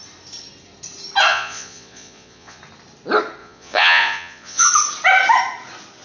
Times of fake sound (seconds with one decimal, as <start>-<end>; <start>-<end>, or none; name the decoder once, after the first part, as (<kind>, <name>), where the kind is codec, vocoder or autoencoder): 1.3-2.6 (vocoder, Vocos); 3.4-4.7